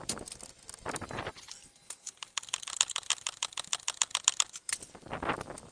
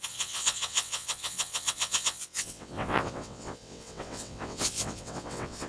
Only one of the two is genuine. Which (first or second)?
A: first